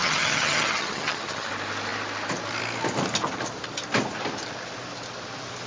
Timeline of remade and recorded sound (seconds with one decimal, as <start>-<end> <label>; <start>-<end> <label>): 0.0-1.5 remade; 1.5-5.7 recorded